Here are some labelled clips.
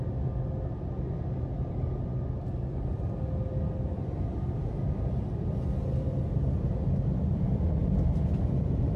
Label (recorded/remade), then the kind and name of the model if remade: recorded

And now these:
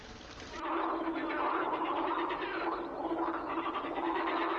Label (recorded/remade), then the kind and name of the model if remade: recorded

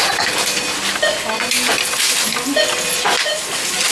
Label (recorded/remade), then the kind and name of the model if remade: recorded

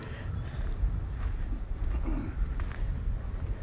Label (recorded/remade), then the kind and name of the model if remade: recorded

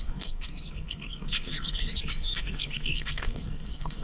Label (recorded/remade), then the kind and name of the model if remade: remade, codec, SNAC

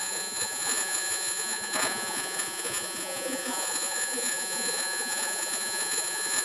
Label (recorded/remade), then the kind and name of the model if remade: remade, vocoder, Vocos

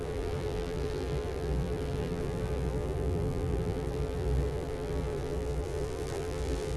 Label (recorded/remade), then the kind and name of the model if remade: remade, vocoder, BigVGAN v2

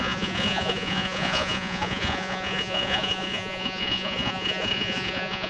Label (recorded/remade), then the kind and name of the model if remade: remade, vocoder, Vocos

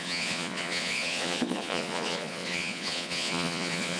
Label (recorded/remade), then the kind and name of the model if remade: remade, vocoder, Vocos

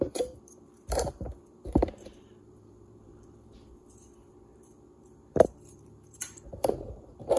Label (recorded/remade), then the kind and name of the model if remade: remade, vocoder, BigVGAN v2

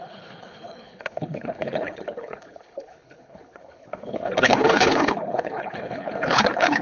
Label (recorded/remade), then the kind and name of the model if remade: remade, codec, HILCodec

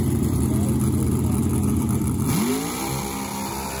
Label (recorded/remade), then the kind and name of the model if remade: recorded